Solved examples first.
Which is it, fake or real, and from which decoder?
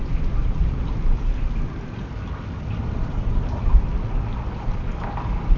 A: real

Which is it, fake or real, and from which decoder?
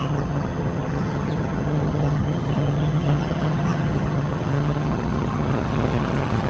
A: fake, vocoder, HiFi-GAN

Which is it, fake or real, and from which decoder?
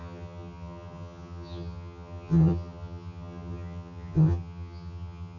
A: fake, vocoder, HiFi-GAN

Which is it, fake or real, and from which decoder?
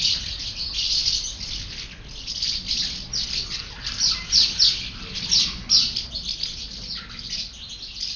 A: real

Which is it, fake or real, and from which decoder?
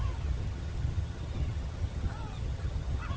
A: fake, vocoder, HiFi-GAN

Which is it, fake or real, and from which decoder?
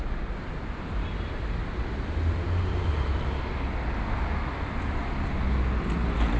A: real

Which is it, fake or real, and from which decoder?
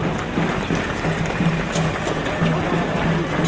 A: real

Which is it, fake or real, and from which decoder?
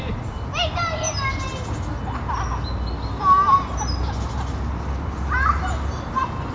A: real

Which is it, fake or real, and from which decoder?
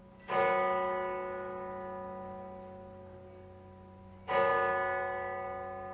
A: real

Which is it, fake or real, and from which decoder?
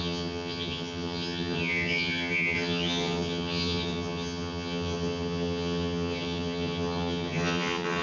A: fake, vocoder, HiFi-GAN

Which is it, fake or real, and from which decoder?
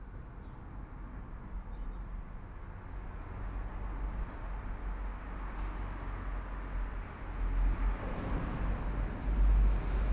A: real